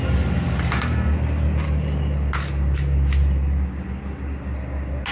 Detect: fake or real real